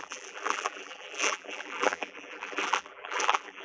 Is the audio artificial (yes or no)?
yes